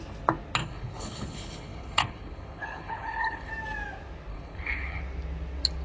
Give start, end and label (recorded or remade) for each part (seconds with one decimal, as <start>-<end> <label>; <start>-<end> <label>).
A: 0.0-0.6 recorded; 0.6-3.5 remade; 3.5-4.3 recorded; 4.3-5.0 remade; 5.0-5.8 recorded